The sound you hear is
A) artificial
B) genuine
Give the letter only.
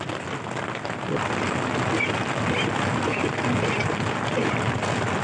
B